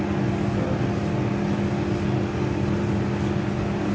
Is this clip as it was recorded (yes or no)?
yes